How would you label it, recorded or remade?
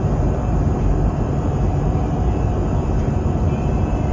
remade